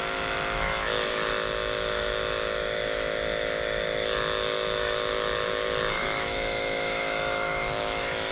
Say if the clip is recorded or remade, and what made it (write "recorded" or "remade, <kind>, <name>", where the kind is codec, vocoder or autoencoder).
remade, autoencoder, DAC-VAE